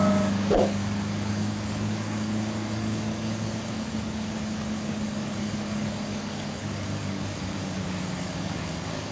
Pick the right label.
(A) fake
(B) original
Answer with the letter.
A